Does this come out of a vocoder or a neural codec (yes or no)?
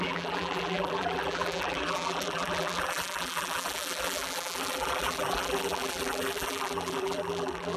yes